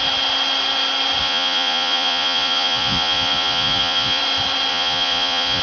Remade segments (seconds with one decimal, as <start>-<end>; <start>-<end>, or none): 1.2-4.2; 4.7-5.6